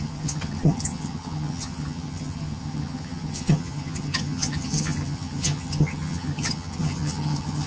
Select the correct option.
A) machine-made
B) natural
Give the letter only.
A